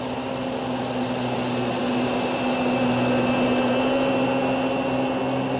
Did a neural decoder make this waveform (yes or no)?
no